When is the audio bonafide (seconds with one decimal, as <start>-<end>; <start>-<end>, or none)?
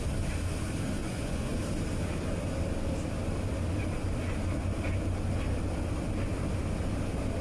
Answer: 0.0-1.0; 1.6-7.4